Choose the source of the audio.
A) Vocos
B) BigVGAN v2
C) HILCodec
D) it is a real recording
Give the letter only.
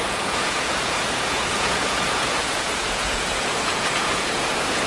A